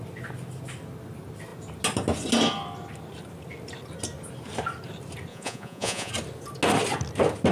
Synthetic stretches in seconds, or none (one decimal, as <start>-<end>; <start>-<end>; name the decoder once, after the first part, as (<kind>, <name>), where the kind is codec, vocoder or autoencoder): 5.3-6.1 (vocoder, Vocos)